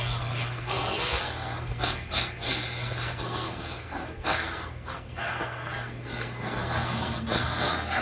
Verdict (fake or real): fake